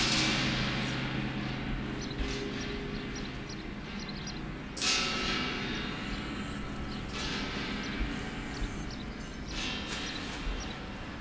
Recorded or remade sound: recorded